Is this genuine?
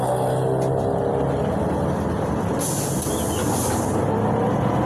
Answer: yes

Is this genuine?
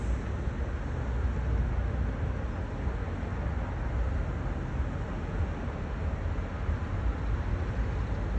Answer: yes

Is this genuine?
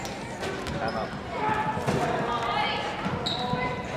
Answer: yes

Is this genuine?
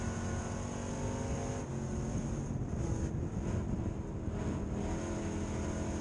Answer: yes